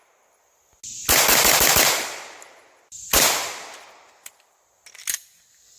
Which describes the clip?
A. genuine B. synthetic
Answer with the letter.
A